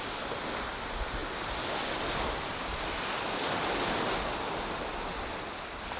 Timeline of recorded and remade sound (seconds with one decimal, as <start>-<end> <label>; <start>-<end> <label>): 0.0-6.0 recorded